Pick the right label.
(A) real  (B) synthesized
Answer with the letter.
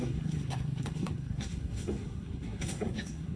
B